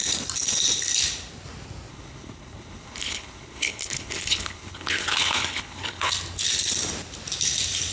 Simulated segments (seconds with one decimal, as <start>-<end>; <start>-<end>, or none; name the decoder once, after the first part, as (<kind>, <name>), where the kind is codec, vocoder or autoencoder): 1.9-6.1 (codec, HILCodec)